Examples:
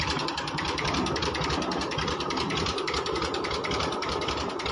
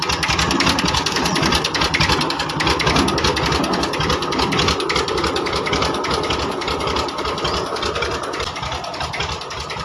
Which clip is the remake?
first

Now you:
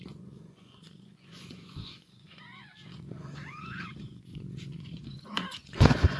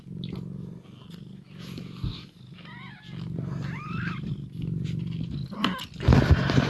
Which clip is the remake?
first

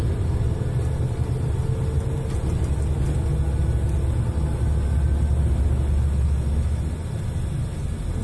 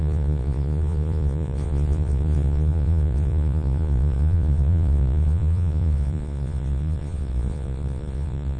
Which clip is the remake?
second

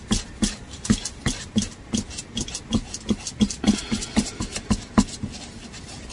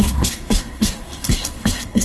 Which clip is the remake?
second